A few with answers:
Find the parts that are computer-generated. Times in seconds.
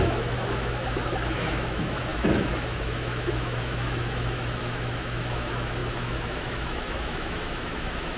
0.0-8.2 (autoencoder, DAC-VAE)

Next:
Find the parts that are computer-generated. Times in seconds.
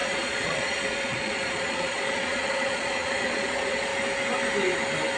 0.0-3.9 (vocoder, Vocos)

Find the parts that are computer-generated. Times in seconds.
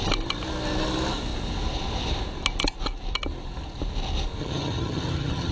4.4-5.5 (vocoder, HiFi-GAN)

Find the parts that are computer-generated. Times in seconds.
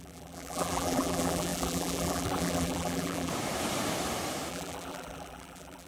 0.0-3.3 (vocoder, BigVGAN v2); 4.5-5.9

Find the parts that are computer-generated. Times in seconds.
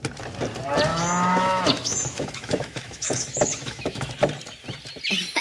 0.9-4.1 (autoencoder, DAC-VAE)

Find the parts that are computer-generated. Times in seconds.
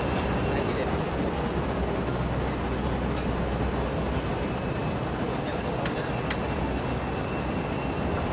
none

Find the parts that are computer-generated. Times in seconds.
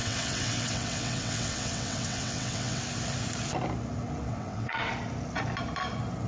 0.0-2.8 (vocoder, WaveNeXt); 4.3-4.9